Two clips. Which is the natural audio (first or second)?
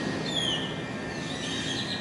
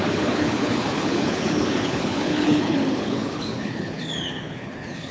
first